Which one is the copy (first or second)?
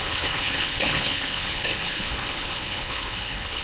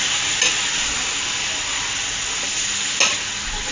first